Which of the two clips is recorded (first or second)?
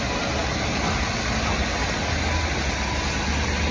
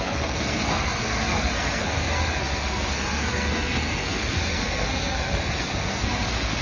first